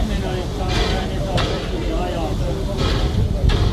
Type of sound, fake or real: real